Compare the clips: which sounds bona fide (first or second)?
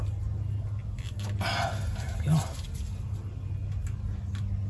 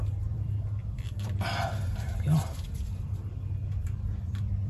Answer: first